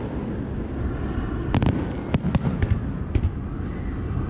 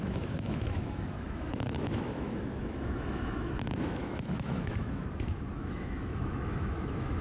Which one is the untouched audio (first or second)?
first